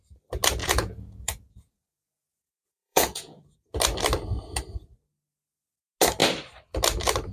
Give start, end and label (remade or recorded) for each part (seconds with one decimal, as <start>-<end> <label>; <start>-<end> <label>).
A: 0.0-0.6 recorded; 0.6-3.8 remade; 3.8-7.3 recorded

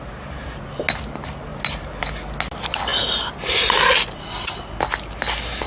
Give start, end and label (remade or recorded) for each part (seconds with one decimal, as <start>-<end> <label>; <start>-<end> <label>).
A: 0.0-5.7 recorded

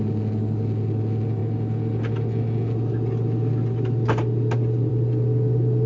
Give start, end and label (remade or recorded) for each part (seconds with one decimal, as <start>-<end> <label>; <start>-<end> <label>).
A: 0.0-5.9 recorded

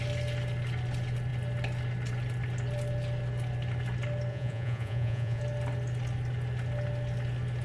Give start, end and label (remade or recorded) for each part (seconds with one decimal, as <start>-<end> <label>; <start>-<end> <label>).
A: 0.0-4.3 recorded; 4.3-5.4 remade; 5.4-7.6 recorded